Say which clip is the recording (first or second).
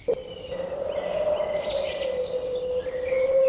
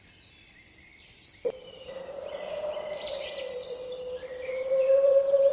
first